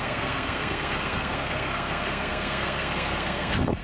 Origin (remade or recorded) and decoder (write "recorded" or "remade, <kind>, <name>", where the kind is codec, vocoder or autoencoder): remade, codec, SNAC